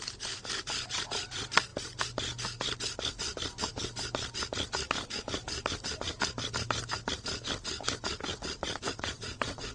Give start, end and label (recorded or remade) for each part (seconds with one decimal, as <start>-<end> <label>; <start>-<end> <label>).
0.0-8.6 recorded; 8.6-9.7 remade